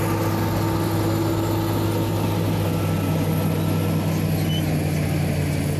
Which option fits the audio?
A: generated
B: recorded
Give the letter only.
B